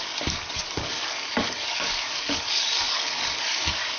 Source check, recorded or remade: remade